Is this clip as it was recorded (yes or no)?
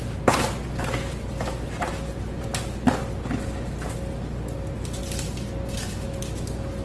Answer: yes